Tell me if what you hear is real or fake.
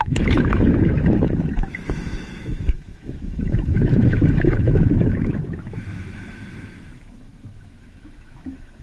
fake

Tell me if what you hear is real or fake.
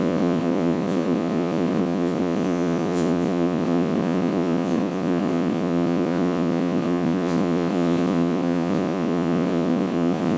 fake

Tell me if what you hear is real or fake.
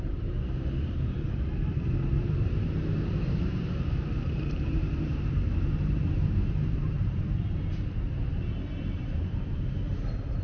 fake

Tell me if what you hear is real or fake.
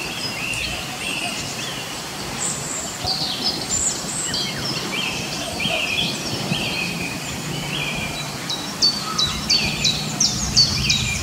fake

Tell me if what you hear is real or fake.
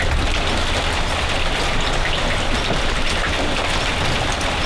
real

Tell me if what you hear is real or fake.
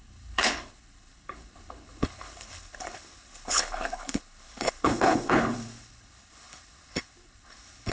fake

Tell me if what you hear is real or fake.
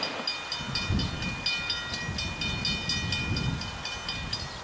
real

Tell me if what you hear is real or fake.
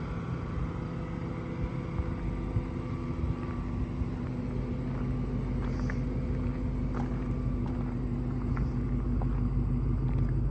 real